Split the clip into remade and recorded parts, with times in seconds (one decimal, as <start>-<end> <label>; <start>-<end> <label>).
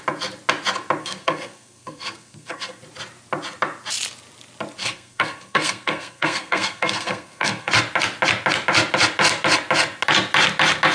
0.0-1.0 recorded; 1.0-2.8 remade; 2.8-4.8 recorded; 4.8-7.7 remade; 7.7-10.9 recorded